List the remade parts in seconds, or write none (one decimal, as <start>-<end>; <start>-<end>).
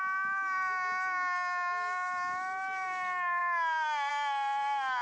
none